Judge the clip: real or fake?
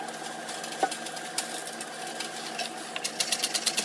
real